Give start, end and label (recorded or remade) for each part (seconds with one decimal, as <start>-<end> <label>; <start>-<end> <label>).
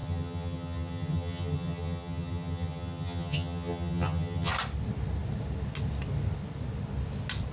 0.0-4.5 remade; 4.5-7.5 recorded